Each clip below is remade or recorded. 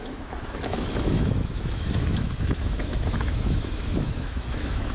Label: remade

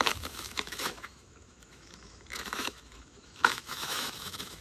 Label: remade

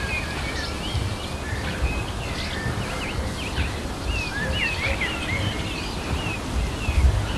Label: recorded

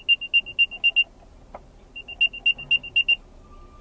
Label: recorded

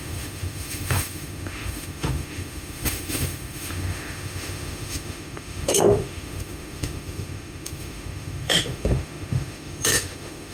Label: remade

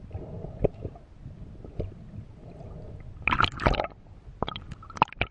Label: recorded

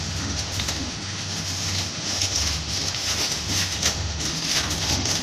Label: remade